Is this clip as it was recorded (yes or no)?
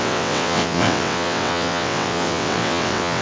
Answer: no